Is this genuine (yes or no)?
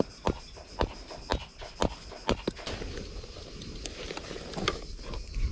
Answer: yes